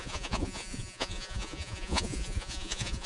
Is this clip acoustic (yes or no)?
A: no